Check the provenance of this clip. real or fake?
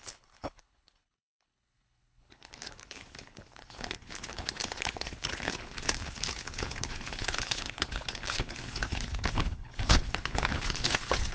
fake